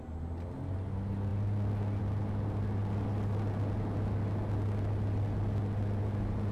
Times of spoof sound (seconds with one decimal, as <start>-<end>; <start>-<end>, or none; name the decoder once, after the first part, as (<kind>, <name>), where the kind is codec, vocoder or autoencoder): none